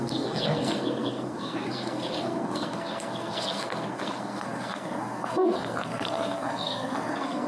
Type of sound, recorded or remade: remade